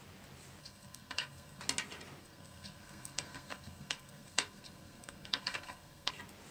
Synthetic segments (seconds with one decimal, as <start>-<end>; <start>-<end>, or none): 0.6-1.6; 2.2-6.1